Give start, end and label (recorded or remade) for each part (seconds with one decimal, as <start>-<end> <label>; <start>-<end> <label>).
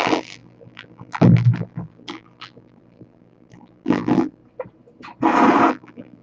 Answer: 0.0-4.4 remade; 4.4-5.7 recorded; 5.7-6.2 remade